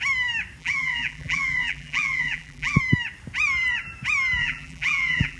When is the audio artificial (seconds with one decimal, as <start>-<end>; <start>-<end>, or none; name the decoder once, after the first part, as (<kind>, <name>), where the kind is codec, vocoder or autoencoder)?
0.6-2.8 (vocoder, BigVGAN v2); 4.4-5.4